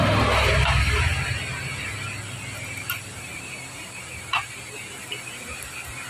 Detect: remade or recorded recorded